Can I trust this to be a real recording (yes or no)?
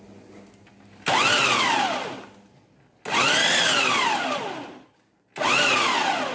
yes